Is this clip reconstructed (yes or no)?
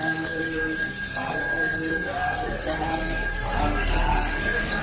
yes